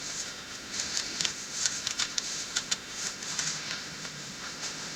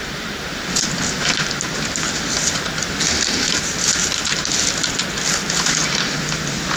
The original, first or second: second